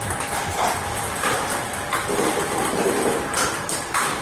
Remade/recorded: remade